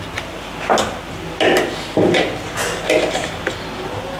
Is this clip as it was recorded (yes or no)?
yes